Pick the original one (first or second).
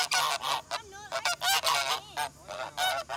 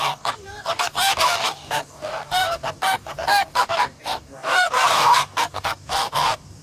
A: first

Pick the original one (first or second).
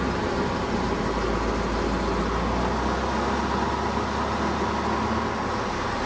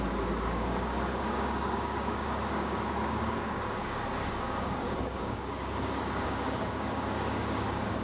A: first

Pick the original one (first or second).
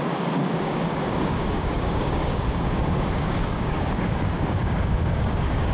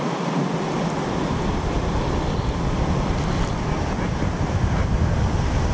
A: second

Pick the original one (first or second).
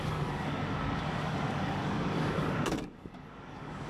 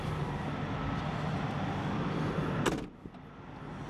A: second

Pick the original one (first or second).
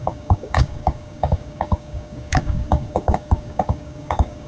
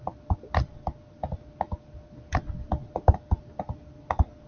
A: second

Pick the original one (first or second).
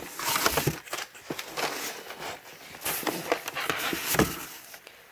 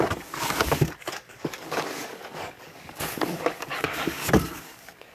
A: first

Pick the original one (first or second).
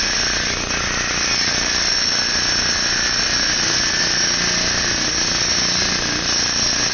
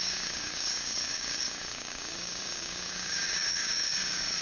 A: first